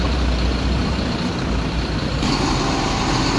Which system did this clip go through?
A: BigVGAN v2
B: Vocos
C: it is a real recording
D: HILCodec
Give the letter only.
A